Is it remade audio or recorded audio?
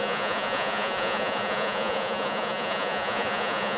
remade